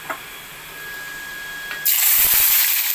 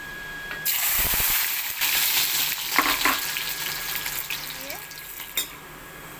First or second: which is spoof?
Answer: second